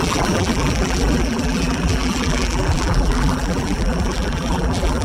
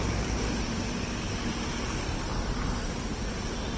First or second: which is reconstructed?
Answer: first